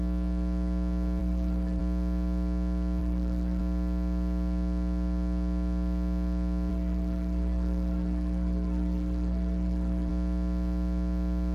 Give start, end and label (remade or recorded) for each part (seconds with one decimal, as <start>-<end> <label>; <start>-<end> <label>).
0.0-1.2 recorded; 1.2-1.8 remade; 1.8-3.0 recorded; 3.0-3.6 remade; 3.6-6.7 recorded; 6.7-10.1 remade; 10.1-11.5 recorded